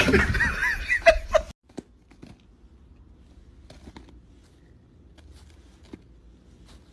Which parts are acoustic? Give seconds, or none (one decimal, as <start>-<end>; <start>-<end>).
0.0-6.9